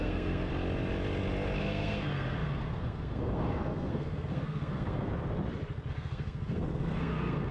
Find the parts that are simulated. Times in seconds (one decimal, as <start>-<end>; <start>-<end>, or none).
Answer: 0.0-0.5; 1.6-5.1; 5.9-7.5

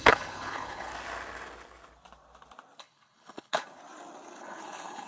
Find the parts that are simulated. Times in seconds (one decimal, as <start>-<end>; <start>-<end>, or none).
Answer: 0.0-0.9; 2.8-3.8; 4.4-5.1

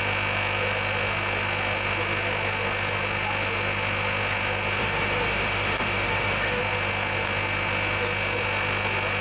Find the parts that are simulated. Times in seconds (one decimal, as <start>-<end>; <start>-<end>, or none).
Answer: 4.8-6.6

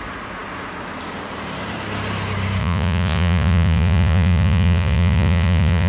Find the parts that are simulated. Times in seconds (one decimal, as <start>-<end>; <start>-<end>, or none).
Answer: 2.6-5.9

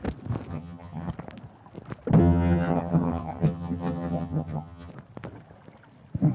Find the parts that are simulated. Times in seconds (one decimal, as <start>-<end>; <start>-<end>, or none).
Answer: 0.5-1.1; 2.2-4.9